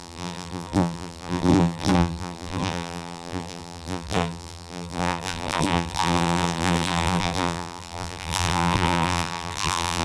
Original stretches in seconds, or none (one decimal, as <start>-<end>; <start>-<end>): none